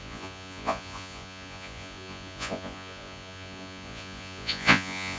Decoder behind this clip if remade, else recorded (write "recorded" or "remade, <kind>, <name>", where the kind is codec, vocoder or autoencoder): remade, vocoder, Vocos